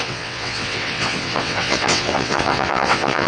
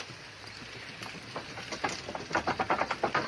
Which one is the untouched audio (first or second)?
second